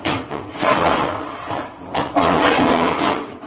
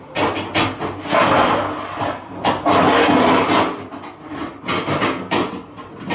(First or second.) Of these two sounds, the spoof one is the first